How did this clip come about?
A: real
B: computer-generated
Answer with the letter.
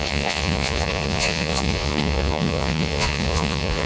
B